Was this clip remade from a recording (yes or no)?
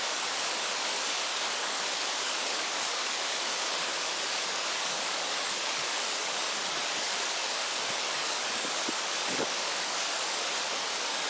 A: yes